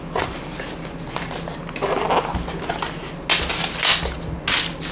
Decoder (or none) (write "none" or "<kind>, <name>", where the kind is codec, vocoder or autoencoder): none